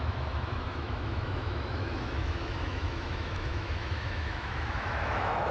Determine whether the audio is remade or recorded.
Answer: remade